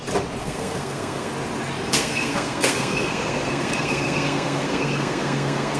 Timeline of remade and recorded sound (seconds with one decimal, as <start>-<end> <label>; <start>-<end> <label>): 0.0-0.4 recorded; 0.4-1.3 remade; 1.3-1.9 recorded; 1.9-5.8 remade